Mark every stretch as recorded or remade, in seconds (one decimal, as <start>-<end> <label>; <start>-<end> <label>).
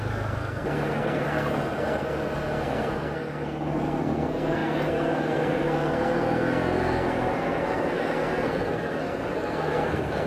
0.0-10.3 remade